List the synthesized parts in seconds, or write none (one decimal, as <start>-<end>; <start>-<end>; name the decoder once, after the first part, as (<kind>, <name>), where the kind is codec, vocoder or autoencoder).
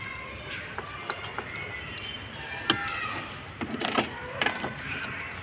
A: none